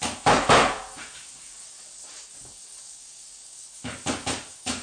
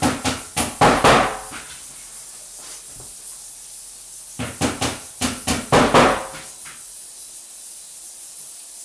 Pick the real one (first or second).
second